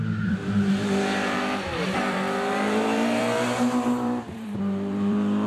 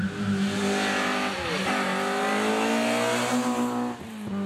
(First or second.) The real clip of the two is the second